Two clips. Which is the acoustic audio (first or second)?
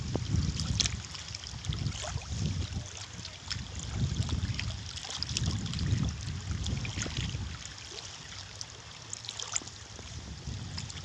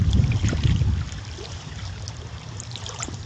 first